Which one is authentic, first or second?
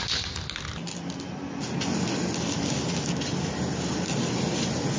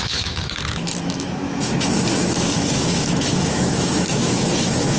first